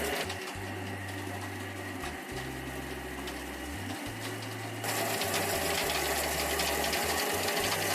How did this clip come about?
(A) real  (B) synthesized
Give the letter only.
A